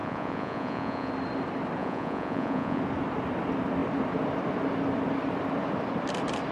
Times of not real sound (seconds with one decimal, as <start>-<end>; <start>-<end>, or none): 0.0-1.1; 1.8-2.8